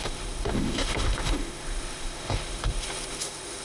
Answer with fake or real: fake